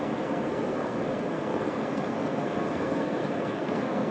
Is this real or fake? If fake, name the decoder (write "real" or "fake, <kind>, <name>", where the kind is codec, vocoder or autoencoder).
fake, codec, SNAC